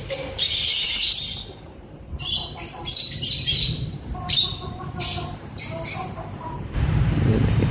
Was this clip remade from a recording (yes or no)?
yes